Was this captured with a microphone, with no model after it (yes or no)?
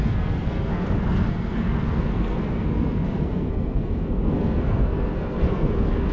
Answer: no